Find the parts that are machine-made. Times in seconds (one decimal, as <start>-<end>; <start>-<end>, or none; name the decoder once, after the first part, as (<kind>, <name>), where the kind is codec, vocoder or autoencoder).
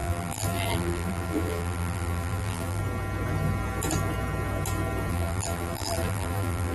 0.0-2.8 (vocoder, BigVGAN v2); 5.1-6.7